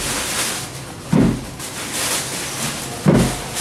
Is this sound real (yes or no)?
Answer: yes